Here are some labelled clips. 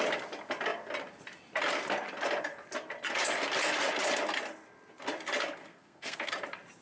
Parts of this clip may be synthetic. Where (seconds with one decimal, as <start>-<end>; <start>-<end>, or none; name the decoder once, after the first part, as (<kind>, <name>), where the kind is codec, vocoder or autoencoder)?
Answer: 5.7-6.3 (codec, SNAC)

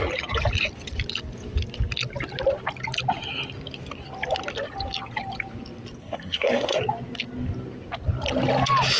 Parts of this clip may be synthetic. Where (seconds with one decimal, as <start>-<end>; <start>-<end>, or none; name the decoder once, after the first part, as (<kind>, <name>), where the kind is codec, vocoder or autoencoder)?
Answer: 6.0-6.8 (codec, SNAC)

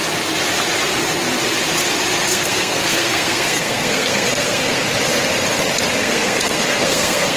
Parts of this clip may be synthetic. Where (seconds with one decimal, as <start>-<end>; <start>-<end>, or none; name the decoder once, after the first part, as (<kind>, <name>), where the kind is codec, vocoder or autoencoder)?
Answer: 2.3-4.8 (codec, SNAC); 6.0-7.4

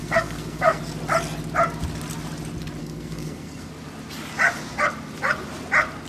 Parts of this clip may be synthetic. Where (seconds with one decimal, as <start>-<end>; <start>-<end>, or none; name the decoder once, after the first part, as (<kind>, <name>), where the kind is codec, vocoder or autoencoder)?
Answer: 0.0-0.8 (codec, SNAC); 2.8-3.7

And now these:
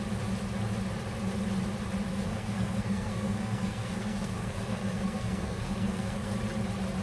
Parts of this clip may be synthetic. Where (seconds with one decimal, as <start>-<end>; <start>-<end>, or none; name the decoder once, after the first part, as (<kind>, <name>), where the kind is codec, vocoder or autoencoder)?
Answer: 2.1-6.3 (codec, SNAC)

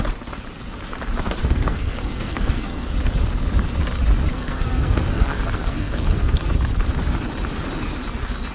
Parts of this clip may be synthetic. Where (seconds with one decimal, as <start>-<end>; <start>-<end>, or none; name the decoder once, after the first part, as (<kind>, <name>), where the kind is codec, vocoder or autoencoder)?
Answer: 1.4-2.9 (codec, SNAC); 4.3-6.5

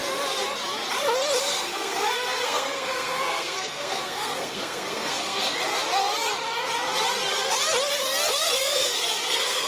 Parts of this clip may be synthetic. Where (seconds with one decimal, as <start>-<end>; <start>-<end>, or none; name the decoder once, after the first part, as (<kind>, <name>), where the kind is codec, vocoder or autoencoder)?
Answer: 1.4-5.7 (codec, SNAC); 8.3-9.7